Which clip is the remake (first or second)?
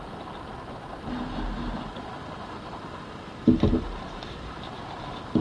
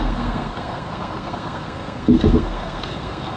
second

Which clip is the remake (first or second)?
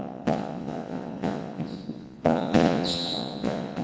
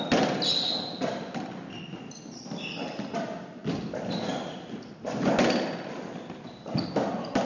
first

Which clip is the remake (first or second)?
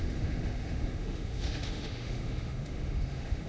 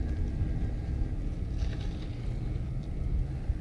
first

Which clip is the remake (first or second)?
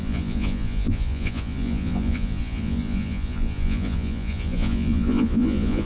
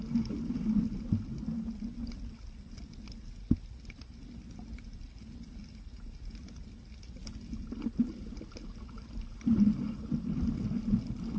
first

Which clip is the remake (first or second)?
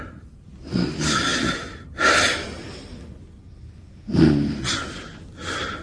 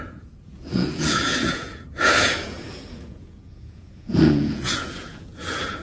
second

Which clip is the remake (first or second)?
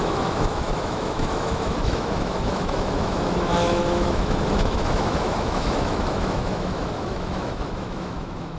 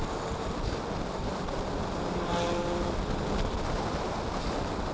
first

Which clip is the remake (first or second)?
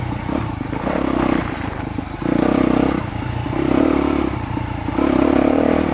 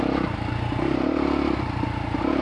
first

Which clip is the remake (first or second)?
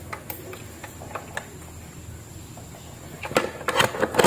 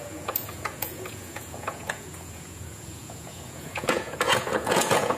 second